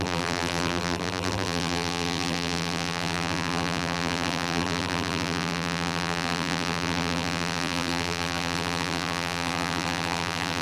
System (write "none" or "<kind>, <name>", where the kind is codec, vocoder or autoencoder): vocoder, BigVGAN v2